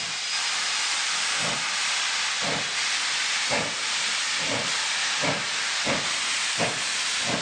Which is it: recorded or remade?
recorded